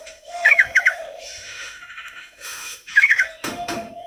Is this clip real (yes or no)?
no